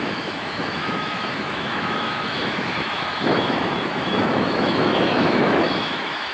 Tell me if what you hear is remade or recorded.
remade